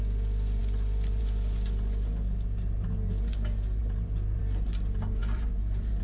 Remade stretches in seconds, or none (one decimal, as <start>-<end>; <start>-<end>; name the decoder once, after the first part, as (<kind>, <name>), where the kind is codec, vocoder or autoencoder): 3.8-4.4 (vocoder, BigVGAN v2); 5.2-6.0